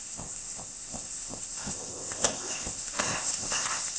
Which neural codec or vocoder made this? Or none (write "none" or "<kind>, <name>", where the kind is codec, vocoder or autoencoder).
codec, ZipCodec